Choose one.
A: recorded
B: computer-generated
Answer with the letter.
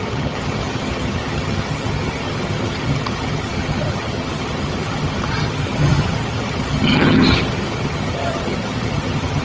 B